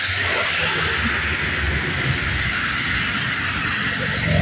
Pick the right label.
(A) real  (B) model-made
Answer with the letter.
A